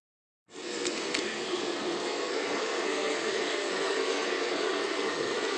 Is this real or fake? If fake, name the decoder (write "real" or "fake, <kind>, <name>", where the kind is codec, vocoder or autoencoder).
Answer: fake, codec, SNAC